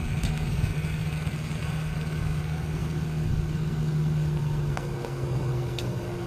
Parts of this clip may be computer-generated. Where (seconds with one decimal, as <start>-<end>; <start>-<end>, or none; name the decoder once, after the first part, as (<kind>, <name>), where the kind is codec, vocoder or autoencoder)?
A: 0.0-6.3 (codec, SNAC)